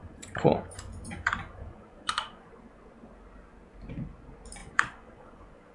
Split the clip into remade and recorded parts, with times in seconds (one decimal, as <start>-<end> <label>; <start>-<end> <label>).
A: 0.0-2.5 remade; 2.5-4.6 recorded; 4.6-5.7 remade